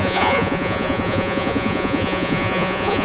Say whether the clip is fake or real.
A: fake